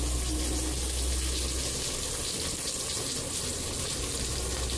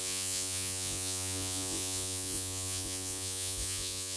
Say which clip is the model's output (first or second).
second